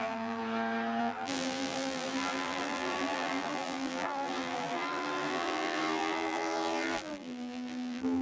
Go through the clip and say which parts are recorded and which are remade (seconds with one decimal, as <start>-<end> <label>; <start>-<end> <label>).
0.0-0.4 remade; 0.4-1.0 recorded; 1.0-8.2 remade

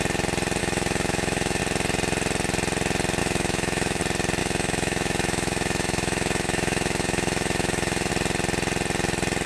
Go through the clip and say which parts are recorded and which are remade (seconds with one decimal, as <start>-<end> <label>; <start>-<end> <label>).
0.0-0.6 recorded; 0.6-1.6 remade; 1.6-3.2 recorded; 3.2-4.0 remade; 4.0-4.4 recorded; 4.4-8.1 remade; 8.1-9.5 recorded